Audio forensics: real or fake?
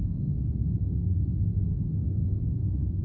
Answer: fake